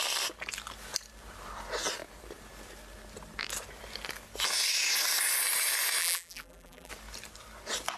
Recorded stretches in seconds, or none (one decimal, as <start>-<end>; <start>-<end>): 0.0-6.0; 6.9-8.0